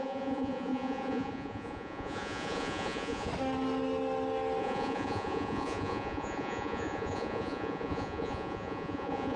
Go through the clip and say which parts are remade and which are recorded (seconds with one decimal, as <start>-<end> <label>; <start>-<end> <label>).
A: 0.0-3.3 remade; 3.3-4.6 recorded; 4.6-9.4 remade